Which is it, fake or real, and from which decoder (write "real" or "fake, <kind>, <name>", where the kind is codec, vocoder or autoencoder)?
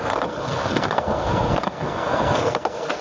fake, codec, SNAC